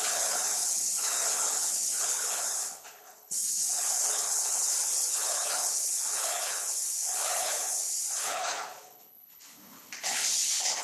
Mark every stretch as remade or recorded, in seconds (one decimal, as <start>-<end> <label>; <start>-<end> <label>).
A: 0.0-10.8 remade

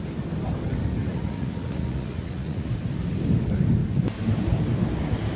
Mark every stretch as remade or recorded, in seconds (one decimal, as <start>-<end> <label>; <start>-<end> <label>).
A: 0.0-1.0 recorded; 1.0-2.7 remade; 2.7-5.4 recorded

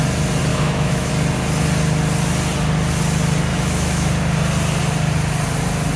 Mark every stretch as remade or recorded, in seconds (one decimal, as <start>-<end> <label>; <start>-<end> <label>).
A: 0.0-0.5 recorded; 0.5-1.1 remade; 1.1-3.5 recorded; 3.5-4.1 remade; 4.1-6.0 recorded